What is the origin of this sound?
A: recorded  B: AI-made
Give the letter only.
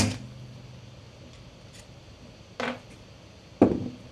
A